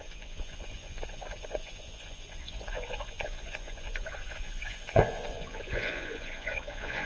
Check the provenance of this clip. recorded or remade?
remade